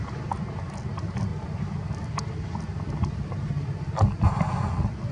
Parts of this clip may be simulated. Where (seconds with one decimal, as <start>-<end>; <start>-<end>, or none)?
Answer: none